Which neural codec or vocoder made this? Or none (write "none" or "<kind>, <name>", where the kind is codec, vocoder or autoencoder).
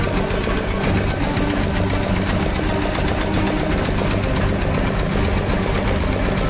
none